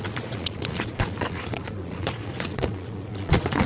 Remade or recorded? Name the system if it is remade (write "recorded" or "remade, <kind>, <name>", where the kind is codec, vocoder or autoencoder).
remade, vocoder, Vocos